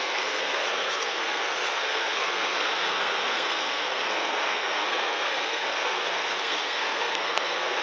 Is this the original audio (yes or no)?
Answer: no